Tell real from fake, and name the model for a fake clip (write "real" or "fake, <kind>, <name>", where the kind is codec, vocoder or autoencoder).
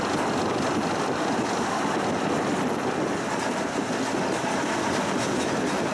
real